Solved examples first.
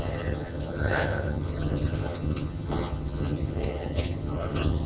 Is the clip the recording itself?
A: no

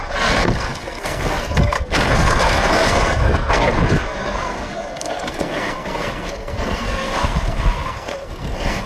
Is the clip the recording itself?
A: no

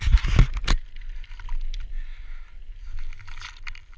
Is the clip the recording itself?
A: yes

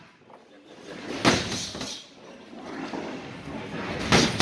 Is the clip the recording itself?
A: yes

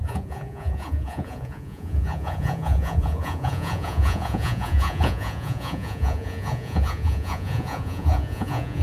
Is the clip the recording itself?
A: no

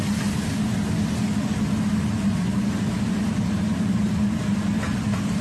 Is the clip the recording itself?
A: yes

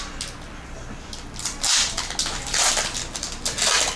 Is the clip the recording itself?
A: yes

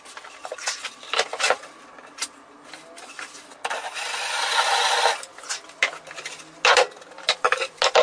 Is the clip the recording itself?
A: yes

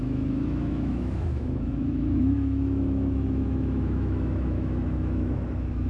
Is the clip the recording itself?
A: no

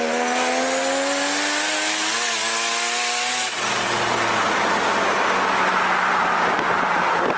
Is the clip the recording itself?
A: yes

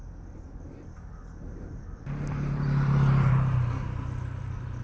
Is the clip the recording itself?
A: yes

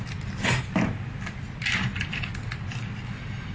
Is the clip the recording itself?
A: yes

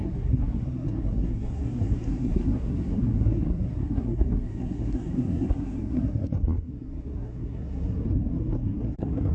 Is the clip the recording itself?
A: no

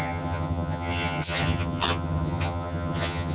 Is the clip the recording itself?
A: no